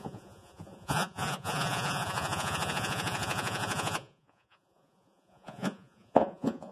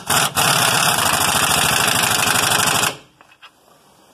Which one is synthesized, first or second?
first